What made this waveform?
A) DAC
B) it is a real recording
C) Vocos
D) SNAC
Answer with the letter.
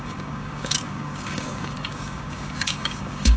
A